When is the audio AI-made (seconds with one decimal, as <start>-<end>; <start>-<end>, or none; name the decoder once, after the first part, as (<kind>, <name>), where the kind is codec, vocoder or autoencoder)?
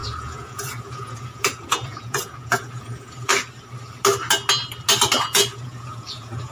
0.0-3.3 (vocoder, Vocos); 5.2-6.5